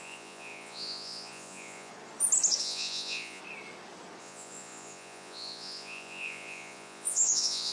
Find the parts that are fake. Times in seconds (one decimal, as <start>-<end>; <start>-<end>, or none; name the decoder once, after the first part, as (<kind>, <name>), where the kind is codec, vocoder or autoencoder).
0.0-1.9 (vocoder, Vocos); 2.6-3.4; 4.2-7.7

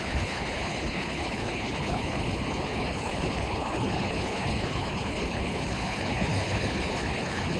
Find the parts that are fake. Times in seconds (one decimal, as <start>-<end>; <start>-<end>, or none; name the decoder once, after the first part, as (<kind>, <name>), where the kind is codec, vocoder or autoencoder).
0.0-7.6 (codec, HILCodec)

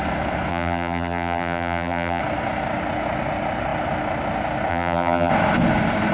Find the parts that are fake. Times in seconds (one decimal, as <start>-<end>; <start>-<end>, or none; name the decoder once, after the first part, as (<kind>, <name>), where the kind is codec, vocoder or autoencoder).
0.5-2.2 (vocoder, BigVGAN v2); 4.7-5.3

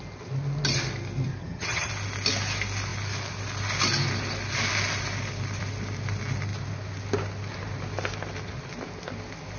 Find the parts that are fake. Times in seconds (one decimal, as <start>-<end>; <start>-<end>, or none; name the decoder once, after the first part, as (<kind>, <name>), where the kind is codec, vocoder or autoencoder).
1.4-1.9 (vocoder, HiFi-GAN)